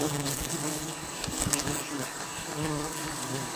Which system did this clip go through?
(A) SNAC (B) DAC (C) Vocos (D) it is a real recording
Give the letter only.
B